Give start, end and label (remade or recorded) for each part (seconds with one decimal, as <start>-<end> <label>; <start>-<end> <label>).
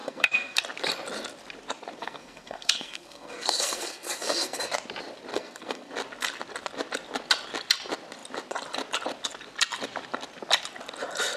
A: 0.0-0.6 remade; 0.6-2.0 recorded; 2.0-4.7 remade; 4.7-5.3 recorded; 5.3-5.9 remade; 5.9-11.4 recorded